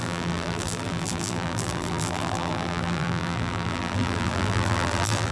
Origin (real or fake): fake